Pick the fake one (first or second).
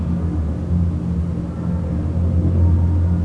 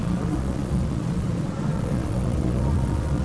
second